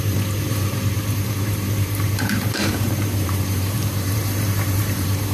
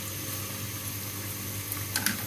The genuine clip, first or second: second